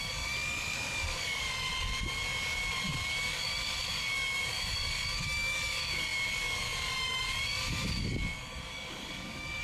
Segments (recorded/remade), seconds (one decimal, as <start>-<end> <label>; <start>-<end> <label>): 0.0-9.6 remade